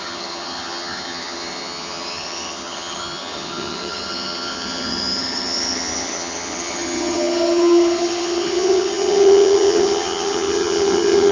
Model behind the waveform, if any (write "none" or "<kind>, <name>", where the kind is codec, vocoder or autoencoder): vocoder, HiFi-GAN